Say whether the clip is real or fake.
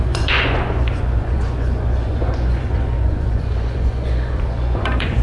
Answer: fake